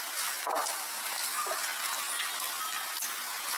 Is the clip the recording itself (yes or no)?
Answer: yes